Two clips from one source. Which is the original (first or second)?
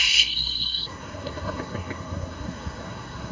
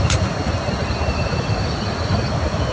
second